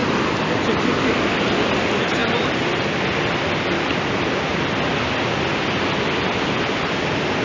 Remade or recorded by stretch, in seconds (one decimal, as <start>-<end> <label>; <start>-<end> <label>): 0.0-7.4 recorded